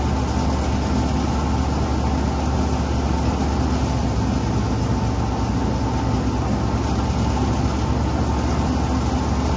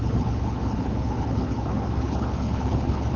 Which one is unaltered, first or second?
first